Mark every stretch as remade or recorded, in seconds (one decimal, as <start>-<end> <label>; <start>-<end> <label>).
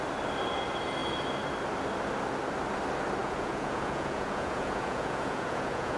0.0-3.2 recorded; 3.2-6.0 remade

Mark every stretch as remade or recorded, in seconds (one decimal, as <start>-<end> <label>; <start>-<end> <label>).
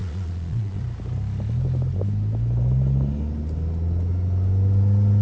0.0-0.8 remade; 0.8-5.2 recorded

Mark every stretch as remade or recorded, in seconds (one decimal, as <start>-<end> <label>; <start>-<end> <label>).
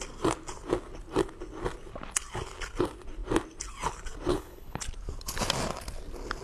0.0-4.3 recorded; 4.3-4.8 remade; 4.8-6.4 recorded